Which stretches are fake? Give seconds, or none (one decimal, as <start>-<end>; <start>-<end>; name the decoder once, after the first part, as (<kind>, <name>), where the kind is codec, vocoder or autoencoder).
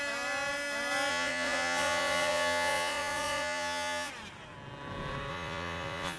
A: 1.1-4.1 (vocoder, Vocos); 5.3-6.2